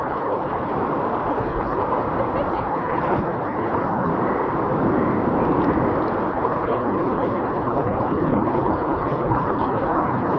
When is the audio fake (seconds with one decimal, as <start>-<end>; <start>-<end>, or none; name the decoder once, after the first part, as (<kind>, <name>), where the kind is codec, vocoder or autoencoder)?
0.0-0.7 (codec, HILCodec); 1.3-1.8; 2.5-4.1; 6.3-10.4